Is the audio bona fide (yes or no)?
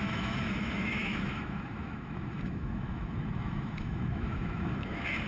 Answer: no